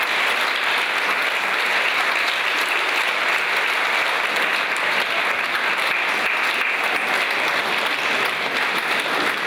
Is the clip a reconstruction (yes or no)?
no